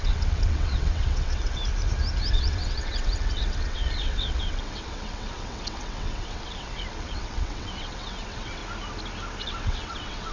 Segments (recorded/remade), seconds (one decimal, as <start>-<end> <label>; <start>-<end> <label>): 0.0-1.6 remade; 1.6-2.3 recorded; 2.3-8.6 remade; 8.6-9.4 recorded; 9.4-10.3 remade